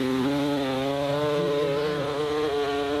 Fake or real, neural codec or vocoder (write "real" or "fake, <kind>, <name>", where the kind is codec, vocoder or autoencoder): real